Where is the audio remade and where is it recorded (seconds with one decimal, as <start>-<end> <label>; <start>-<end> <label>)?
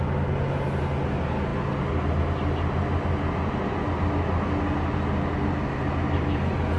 0.0-6.8 recorded